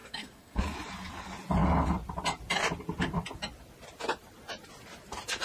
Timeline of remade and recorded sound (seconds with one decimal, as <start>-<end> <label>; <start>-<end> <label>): 0.0-0.6 remade; 0.6-5.4 recorded